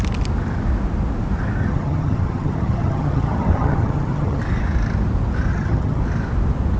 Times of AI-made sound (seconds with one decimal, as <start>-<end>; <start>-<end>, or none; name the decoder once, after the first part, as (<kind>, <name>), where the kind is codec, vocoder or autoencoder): 1.6-4.4 (vocoder, HiFi-GAN); 5.5-6.0